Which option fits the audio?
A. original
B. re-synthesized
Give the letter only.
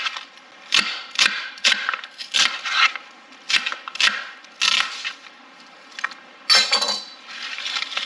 A